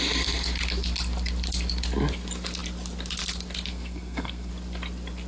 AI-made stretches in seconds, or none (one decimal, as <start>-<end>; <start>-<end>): 3.7-4.5